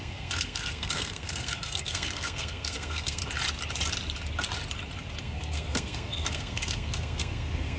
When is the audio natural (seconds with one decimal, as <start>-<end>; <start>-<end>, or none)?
3.2-5.2